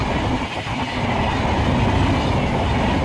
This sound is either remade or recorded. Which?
recorded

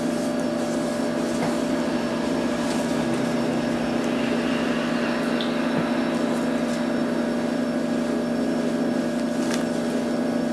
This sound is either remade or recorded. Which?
recorded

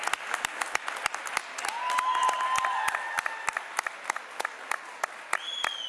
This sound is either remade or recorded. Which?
recorded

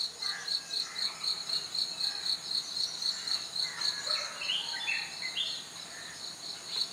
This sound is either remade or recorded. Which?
recorded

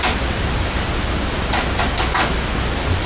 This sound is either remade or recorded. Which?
recorded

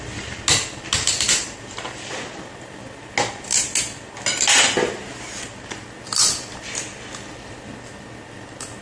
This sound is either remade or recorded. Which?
recorded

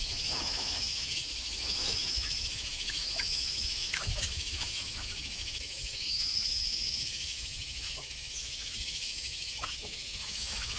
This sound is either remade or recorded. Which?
remade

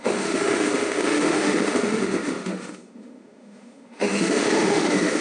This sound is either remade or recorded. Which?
remade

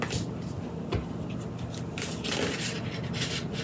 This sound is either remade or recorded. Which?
recorded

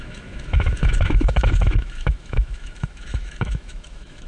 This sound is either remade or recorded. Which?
remade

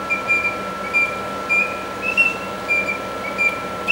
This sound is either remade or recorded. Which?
recorded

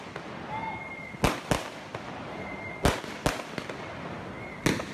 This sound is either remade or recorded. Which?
recorded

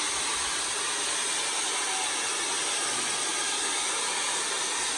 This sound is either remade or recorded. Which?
recorded